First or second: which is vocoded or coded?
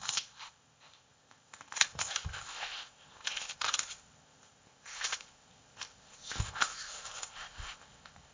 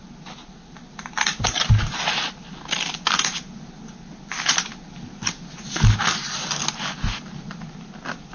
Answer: first